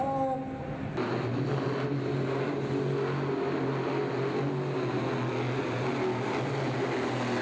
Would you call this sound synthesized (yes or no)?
no